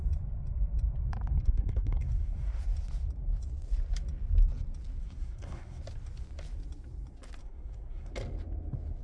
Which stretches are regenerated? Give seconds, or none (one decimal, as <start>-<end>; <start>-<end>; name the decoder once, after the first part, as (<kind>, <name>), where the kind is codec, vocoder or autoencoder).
1.3-2.6 (codec, SNAC); 5.0-5.8; 7.4-8.1

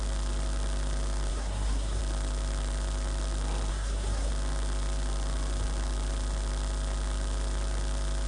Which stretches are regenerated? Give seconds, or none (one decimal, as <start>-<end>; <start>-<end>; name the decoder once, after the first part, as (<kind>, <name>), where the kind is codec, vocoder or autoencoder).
1.3-2.0 (codec, SNAC); 3.7-4.3

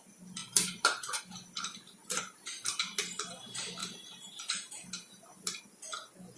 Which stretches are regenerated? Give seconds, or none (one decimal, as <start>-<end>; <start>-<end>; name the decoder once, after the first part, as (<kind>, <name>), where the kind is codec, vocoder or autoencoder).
0.4-1.2 (vocoder, BigVGAN v2); 2.0-2.8; 3.8-5.6